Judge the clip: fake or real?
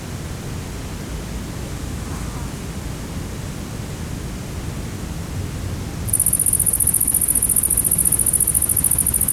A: real